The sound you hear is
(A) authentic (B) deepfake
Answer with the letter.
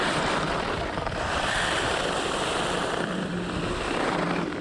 B